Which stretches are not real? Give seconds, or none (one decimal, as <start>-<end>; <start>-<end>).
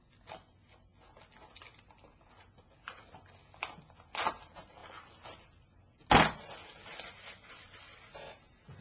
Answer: none